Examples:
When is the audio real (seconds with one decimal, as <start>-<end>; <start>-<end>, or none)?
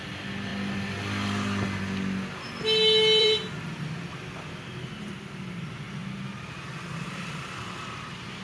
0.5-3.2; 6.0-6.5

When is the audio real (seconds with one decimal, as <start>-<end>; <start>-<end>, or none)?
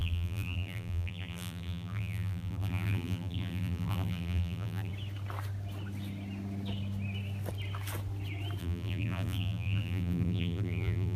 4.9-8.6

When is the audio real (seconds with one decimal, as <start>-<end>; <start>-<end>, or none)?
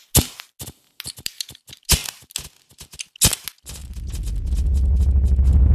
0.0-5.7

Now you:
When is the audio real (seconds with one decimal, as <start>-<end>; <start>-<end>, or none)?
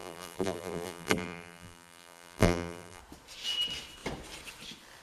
3.0-5.0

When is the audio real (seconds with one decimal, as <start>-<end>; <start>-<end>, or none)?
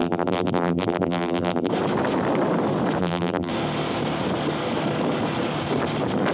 1.7-3.0; 3.5-6.3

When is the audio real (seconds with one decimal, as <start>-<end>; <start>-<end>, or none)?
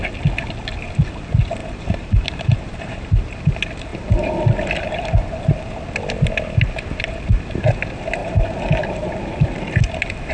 0.0-1.6; 3.1-8.2; 8.8-10.3